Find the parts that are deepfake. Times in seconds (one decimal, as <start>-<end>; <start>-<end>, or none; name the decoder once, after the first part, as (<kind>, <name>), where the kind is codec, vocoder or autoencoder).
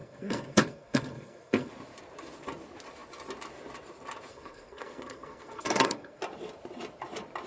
0.0-1.7 (codec, SNAC); 4.3-6.2